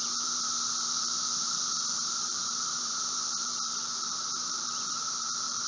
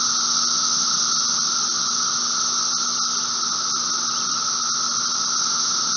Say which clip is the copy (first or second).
first